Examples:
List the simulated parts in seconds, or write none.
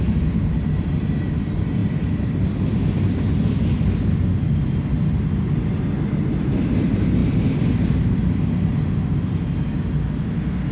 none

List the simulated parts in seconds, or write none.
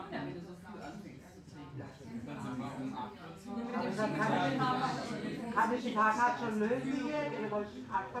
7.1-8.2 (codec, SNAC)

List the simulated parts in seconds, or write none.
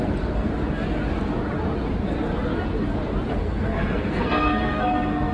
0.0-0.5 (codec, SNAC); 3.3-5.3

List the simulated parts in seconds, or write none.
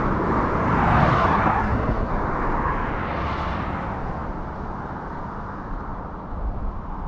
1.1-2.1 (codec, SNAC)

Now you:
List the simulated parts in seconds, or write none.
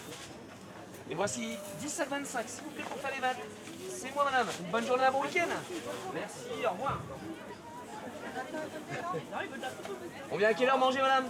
0.8-2.1 (codec, SNAC)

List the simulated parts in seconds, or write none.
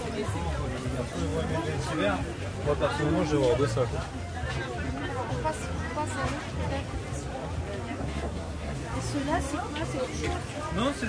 8.0-8.8 (codec, SNAC)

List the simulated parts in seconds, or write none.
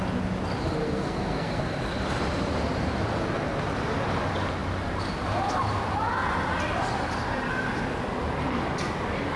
0.8-1.6 (codec, SNAC)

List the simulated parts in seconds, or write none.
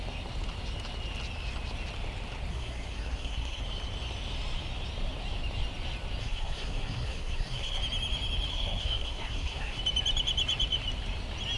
2.5-3.6 (codec, SNAC); 6.2-7.8; 8.5-9.8